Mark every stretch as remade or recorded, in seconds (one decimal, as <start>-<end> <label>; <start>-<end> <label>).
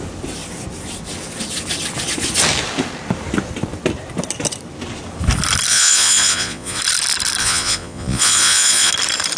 0.0-5.7 recorded; 5.7-6.8 remade; 6.8-7.4 recorded; 7.4-8.9 remade; 8.9-9.4 recorded